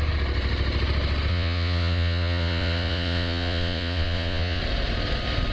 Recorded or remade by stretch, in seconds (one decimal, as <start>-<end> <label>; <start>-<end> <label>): 0.0-1.3 recorded; 1.3-4.6 remade; 4.6-5.5 recorded